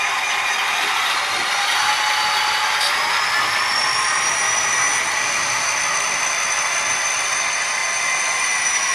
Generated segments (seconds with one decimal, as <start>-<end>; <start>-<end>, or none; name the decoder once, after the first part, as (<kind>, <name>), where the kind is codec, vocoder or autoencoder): 0.7-4.3 (vocoder, BigVGAN v2); 4.9-5.8